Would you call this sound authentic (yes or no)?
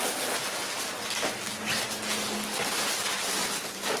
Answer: yes